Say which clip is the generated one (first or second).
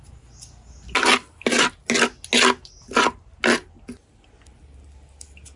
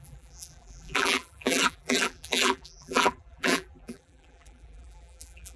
second